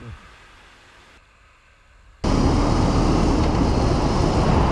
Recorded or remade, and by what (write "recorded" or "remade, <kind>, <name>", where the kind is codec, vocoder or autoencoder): recorded